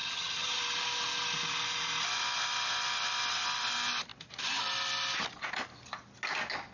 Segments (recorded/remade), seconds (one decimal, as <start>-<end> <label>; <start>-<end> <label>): 0.0-0.6 remade; 0.6-6.7 recorded